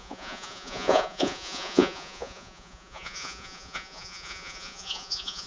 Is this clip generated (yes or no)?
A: yes